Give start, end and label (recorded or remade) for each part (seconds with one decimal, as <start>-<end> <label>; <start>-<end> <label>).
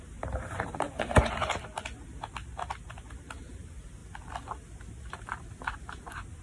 0.0-1.4 remade; 1.4-3.4 recorded; 3.4-4.0 remade; 4.0-4.9 recorded; 4.9-6.4 remade